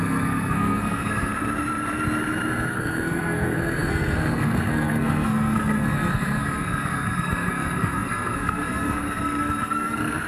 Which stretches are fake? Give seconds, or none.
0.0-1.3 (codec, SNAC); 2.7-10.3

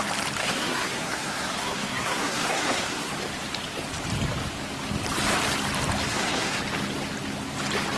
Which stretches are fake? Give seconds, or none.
0.4-3.1 (codec, SNAC); 6.1-6.6